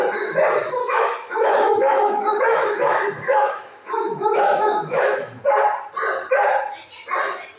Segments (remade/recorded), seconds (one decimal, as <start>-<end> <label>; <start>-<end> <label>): 0.0-0.8 recorded; 0.8-5.4 remade; 5.4-7.6 recorded